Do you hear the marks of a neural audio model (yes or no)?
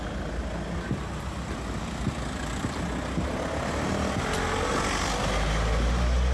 no